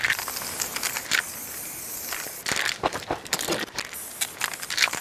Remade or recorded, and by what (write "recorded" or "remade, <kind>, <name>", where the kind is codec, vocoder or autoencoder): recorded